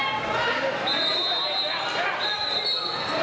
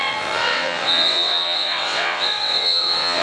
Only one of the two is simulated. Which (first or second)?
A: second